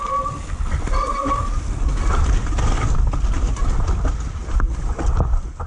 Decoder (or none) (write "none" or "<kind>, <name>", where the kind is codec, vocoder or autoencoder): none